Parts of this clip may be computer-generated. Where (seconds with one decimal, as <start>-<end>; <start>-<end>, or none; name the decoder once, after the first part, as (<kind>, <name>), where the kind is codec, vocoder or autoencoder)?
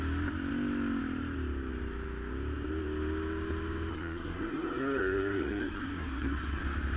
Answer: 3.9-6.6 (codec, SNAC)